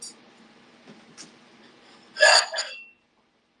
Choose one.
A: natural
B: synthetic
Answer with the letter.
A